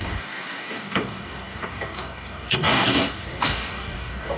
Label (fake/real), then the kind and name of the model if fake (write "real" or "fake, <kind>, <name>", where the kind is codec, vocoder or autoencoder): fake, codec, DAC